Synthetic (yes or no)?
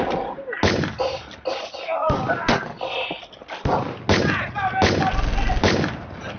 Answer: no